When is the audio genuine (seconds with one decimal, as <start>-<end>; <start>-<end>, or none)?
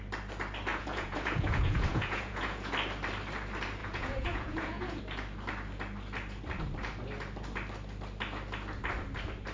0.0-0.7; 2.7-3.8; 5.0-9.5